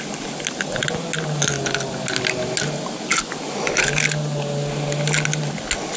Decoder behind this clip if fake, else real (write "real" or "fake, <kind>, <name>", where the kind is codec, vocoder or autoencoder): real